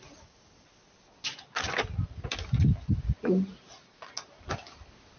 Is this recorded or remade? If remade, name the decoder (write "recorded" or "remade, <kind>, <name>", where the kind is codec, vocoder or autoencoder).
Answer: recorded